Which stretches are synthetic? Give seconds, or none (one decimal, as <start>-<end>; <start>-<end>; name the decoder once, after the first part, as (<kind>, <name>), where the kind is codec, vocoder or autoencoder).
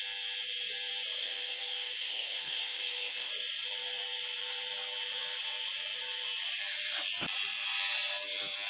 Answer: 1.2-3.3 (codec, SNAC)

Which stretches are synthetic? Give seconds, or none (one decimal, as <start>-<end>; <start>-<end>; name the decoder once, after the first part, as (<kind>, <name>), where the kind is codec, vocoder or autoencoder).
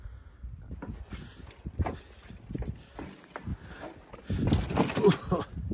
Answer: none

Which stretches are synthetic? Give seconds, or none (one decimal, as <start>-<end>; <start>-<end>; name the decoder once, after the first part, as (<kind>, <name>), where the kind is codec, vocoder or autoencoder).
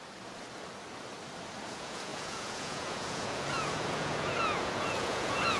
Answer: 1.7-5.6 (vocoder, Vocos)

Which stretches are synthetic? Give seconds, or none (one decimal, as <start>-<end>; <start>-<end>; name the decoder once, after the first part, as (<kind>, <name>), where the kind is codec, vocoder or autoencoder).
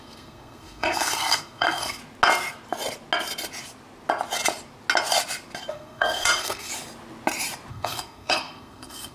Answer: 0.0-2.0 (codec, SNAC); 5.7-6.7; 7.7-9.1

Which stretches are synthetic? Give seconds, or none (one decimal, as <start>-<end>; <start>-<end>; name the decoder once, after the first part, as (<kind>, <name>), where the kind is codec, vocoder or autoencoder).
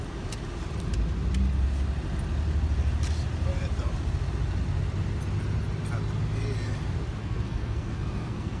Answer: 7.2-8.6 (codec, SNAC)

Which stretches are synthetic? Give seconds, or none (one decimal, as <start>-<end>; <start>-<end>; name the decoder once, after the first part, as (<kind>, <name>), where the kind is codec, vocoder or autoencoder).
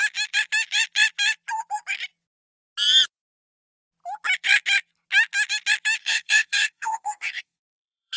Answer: 6.0-8.2 (codec, DAC)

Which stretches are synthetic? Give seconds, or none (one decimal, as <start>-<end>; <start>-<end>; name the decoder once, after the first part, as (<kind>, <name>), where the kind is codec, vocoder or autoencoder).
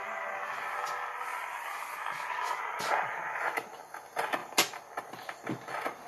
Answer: none